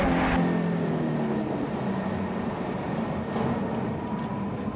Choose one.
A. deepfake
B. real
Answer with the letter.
B